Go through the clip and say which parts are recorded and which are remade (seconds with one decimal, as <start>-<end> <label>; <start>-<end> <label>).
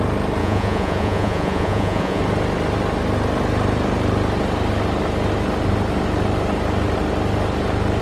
0.0-0.4 recorded; 0.4-2.2 remade; 2.2-8.0 recorded